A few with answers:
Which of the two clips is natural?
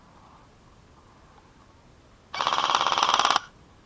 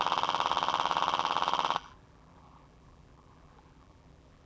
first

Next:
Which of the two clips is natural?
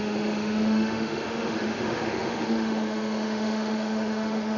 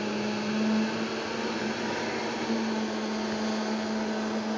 second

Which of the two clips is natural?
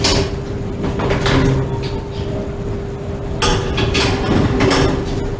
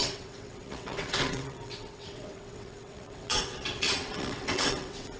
first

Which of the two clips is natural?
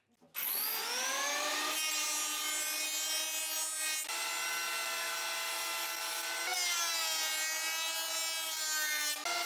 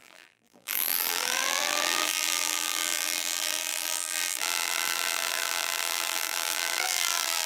first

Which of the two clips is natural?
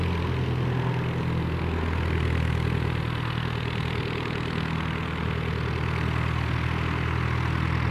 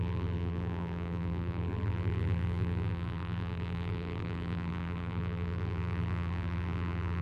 first